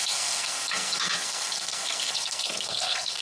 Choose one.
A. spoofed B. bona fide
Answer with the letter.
A